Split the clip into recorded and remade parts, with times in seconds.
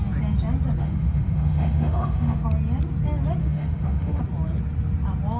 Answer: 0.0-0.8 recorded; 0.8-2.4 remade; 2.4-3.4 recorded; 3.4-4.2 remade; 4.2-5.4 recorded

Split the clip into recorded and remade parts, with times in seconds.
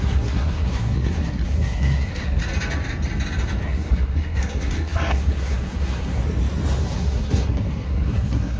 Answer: 0.0-2.4 remade; 2.4-3.6 recorded; 3.6-6.2 remade; 6.2-6.8 recorded; 6.8-8.6 remade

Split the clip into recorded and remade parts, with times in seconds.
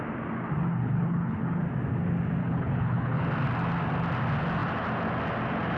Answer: 0.0-0.7 recorded; 0.7-1.6 remade; 1.6-2.4 recorded; 2.4-3.2 remade; 3.2-5.8 recorded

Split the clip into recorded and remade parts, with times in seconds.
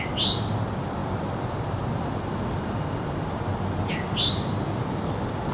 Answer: 0.0-5.5 recorded